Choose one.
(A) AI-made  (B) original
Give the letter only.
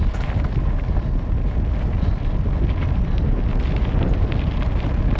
B